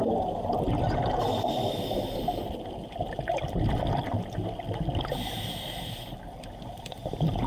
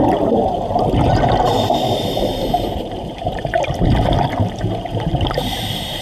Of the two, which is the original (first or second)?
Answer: first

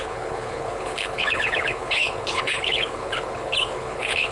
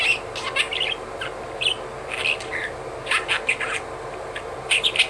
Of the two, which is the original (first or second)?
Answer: second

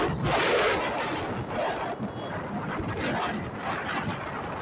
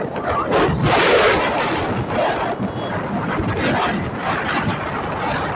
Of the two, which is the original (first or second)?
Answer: first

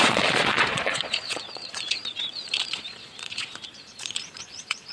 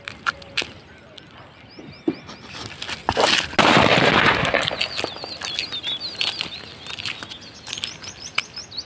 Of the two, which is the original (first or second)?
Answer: second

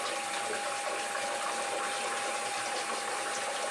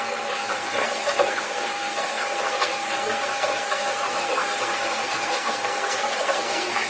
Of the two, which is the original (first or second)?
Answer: first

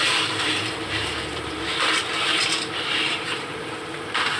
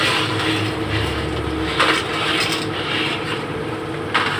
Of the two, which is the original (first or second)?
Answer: second